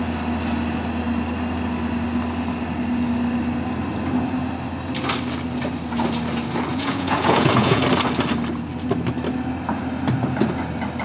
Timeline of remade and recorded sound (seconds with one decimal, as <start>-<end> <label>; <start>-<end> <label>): 0.0-6.7 recorded; 6.7-7.8 remade; 7.8-11.0 recorded